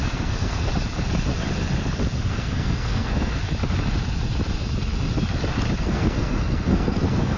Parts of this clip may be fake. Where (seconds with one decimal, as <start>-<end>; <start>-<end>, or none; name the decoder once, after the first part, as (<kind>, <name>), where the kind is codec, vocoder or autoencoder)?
0.0-0.7 (codec, SNAC); 2.3-3.4; 5.8-7.4